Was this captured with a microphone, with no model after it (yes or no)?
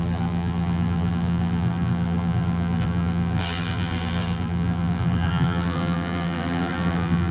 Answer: no